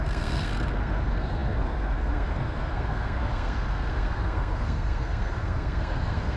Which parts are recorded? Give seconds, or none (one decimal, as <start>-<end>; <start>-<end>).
none